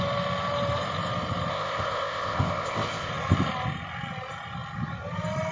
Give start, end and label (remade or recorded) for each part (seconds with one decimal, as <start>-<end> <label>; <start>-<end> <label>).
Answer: 0.0-1.5 recorded; 1.5-3.1 remade; 3.1-5.5 recorded